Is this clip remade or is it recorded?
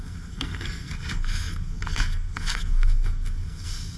remade